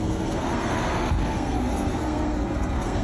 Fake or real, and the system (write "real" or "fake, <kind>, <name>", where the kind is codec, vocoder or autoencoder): fake, codec, SNAC